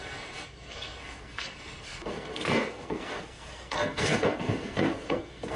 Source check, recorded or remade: remade